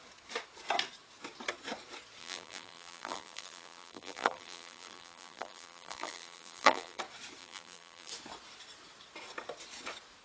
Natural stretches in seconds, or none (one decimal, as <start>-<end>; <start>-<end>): 0.0-2.2; 7.0-7.4; 8.1-10.2